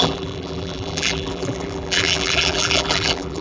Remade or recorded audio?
remade